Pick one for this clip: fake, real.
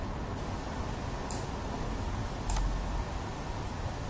real